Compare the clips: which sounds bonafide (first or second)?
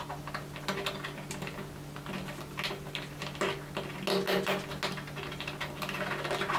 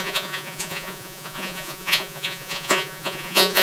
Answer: first